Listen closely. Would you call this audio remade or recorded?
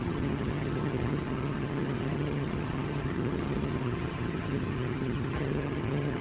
remade